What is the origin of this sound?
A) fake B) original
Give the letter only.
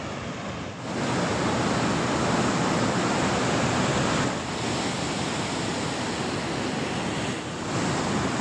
B